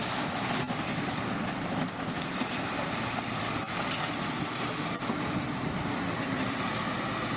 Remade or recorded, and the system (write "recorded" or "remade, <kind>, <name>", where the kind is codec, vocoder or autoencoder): remade, vocoder, BigVGAN v2